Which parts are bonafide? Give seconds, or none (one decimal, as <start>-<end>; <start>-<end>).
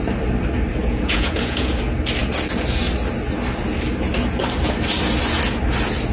0.0-0.8; 1.7-6.1